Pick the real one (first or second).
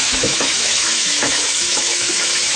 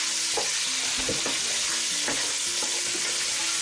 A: second